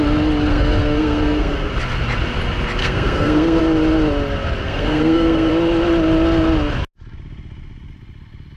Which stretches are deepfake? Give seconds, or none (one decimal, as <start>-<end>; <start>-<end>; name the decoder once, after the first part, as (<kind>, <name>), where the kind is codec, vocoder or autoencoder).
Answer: 0.5-1.7 (codec, SNAC); 2.8-3.6; 4.6-5.5